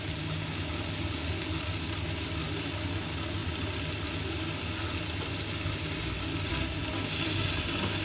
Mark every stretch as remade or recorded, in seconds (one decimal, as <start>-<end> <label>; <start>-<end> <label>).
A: 0.0-3.4 recorded; 3.4-4.1 remade; 4.1-8.0 recorded